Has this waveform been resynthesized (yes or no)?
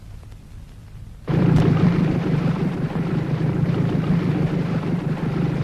yes